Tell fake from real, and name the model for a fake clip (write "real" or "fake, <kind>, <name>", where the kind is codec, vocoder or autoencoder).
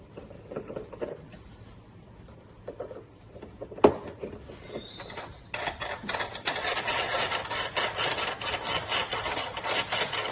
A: real